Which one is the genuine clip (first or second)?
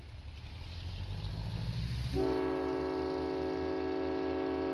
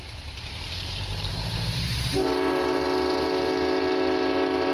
first